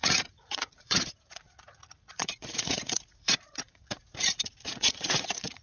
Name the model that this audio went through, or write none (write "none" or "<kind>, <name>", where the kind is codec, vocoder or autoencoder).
vocoder, Vocos